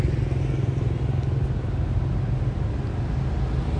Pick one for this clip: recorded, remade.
recorded